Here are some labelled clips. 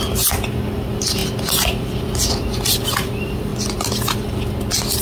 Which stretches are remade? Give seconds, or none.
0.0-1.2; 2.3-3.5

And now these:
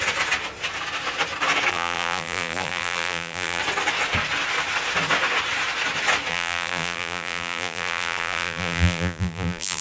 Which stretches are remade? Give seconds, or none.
1.7-3.6; 6.3-9.8

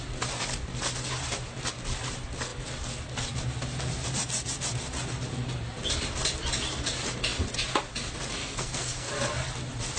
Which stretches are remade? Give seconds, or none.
8.4-9.1

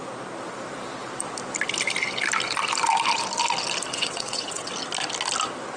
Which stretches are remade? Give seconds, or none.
3.9-4.7

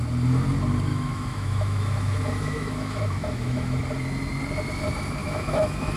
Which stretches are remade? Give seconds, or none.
0.9-3.8; 5.2-6.0